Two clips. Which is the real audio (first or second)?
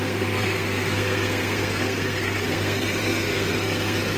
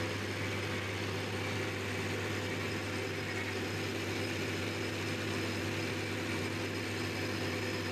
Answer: second